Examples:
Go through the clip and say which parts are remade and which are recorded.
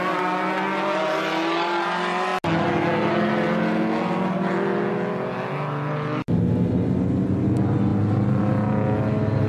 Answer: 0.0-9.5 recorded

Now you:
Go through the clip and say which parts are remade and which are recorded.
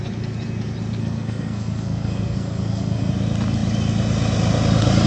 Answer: 0.0-1.0 recorded; 1.0-3.1 remade; 3.1-5.1 recorded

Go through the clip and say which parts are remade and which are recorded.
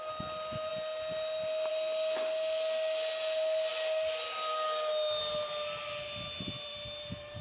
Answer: 0.0-6.7 recorded; 6.7-7.4 remade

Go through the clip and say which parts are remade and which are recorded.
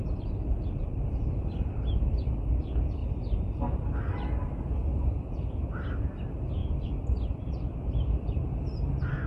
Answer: 0.0-2.6 remade; 2.6-6.6 recorded; 6.6-8.9 remade; 8.9-9.3 recorded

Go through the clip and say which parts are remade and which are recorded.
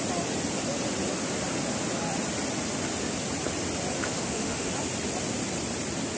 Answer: 0.0-4.0 recorded; 4.0-4.7 remade; 4.7-6.2 recorded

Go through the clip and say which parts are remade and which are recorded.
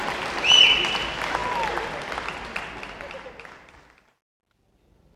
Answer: 0.0-5.2 recorded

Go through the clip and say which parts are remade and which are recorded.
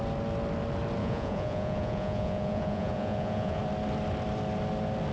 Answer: 0.0-1.0 recorded; 1.0-3.6 remade; 3.6-5.1 recorded